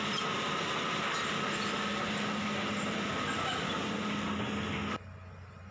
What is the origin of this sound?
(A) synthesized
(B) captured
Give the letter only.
B